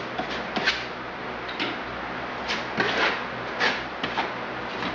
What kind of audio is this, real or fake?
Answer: real